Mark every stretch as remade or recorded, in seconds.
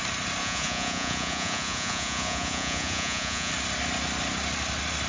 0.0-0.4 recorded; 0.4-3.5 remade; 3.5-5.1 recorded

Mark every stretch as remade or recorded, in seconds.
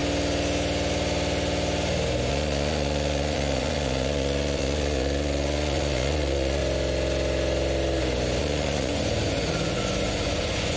0.0-2.3 recorded; 2.3-6.6 remade; 6.6-8.4 recorded; 8.4-10.8 remade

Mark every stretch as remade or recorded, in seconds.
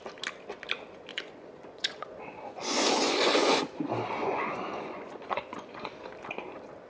0.0-1.1 recorded; 1.1-3.6 remade; 3.6-4.2 recorded; 4.2-5.9 remade; 5.9-6.9 recorded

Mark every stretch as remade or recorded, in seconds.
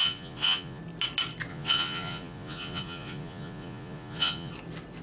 0.0-0.8 remade; 0.8-1.5 recorded; 1.5-4.5 remade; 4.5-5.0 recorded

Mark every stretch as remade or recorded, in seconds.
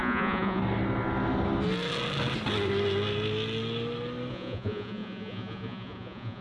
0.0-0.6 remade; 0.6-4.3 recorded; 4.3-6.4 remade